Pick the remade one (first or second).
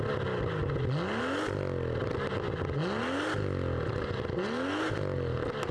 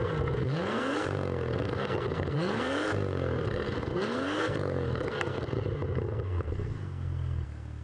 second